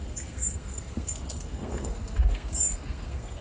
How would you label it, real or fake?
fake